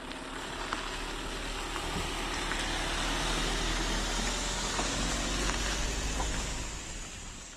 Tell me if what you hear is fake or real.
real